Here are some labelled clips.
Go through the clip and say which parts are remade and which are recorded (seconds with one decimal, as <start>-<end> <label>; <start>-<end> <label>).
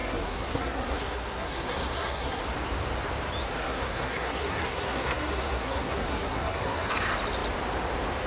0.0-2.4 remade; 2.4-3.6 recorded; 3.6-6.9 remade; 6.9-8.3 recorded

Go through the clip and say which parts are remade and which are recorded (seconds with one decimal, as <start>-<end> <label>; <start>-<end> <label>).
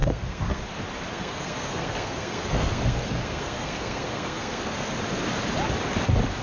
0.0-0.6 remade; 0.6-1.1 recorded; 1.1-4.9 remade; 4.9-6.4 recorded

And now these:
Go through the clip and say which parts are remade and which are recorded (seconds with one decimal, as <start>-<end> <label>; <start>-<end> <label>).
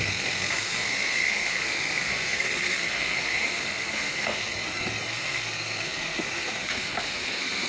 0.0-4.5 remade; 4.5-5.1 recorded; 5.1-7.7 remade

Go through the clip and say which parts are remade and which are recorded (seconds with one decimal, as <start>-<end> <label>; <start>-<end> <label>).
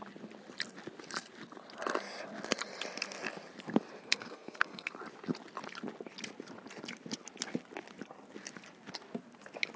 0.0-4.0 recorded; 4.0-4.9 remade; 4.9-9.8 recorded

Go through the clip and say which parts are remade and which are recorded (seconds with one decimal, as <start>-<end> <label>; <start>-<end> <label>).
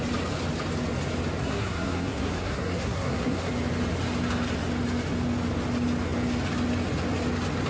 0.0-1.4 recorded; 1.4-3.5 remade; 3.5-7.7 recorded